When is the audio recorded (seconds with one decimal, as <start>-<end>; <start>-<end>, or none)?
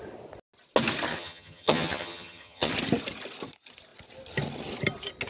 0.0-1.1; 2.7-5.3